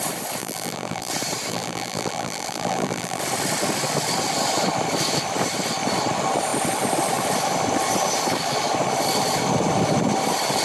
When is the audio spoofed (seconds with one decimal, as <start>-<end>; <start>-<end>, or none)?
0.4-1.1; 1.5-3.2